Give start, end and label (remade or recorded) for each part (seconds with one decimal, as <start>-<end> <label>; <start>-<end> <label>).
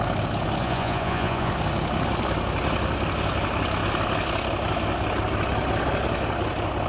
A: 0.0-0.6 recorded; 0.6-1.5 remade; 1.5-6.9 recorded